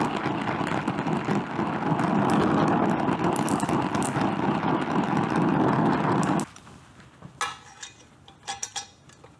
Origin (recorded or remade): recorded